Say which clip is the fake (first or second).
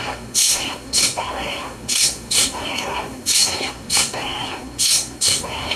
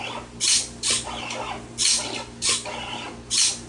first